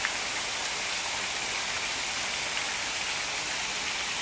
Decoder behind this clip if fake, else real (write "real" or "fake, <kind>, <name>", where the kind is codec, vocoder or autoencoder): real